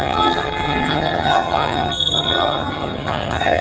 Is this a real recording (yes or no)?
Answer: no